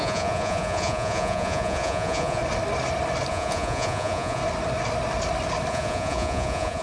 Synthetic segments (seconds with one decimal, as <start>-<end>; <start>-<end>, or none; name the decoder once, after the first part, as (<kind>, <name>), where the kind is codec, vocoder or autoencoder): 0.0-2.4 (vocoder, Vocos); 3.3-4.4; 5.7-6.8

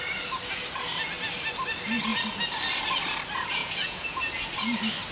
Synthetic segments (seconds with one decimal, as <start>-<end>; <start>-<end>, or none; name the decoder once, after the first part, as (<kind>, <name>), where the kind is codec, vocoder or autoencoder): 3.6-4.2 (vocoder, Vocos)

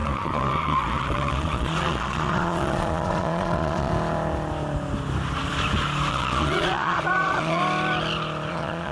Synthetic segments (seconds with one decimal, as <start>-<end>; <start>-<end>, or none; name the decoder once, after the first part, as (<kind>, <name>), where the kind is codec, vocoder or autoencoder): 0.0-3.9 (vocoder, Vocos); 6.1-7.6; 8.5-8.9

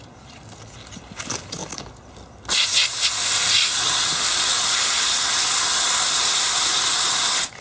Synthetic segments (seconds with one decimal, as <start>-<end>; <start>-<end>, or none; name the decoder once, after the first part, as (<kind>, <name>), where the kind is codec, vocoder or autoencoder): none

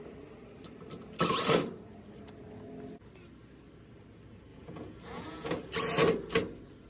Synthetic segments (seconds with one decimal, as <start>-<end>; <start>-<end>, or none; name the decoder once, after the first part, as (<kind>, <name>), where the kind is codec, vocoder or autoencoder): 4.5-5.5 (vocoder, Vocos)

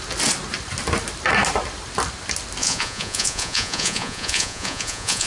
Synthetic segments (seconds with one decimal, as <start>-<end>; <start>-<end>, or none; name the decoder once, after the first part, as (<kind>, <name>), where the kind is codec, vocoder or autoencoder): 2.6-5.3 (vocoder, Vocos)

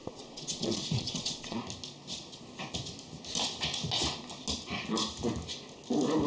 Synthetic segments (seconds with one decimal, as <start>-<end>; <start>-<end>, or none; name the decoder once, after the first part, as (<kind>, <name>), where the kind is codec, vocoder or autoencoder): 0.0-1.6 (vocoder, Vocos)

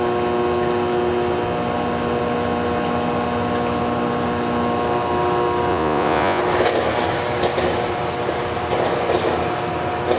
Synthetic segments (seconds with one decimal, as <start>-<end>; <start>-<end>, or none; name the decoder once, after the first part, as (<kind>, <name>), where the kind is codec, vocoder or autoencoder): 5.7-6.4 (vocoder, Vocos)